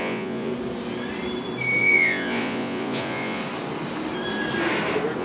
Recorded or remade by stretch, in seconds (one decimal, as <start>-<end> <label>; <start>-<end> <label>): 0.0-0.5 remade; 0.5-1.8 recorded; 1.8-3.4 remade; 3.4-5.2 recorded